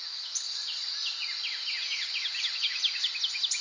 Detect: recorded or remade recorded